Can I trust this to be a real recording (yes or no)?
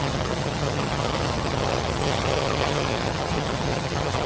no